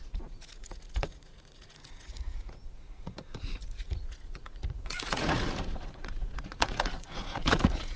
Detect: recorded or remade remade